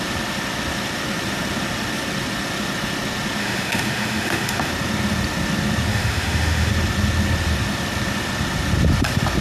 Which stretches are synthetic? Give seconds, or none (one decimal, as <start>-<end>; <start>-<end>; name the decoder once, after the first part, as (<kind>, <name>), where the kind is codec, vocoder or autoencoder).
3.4-4.7 (autoencoder, DAC-VAE); 5.9-6.7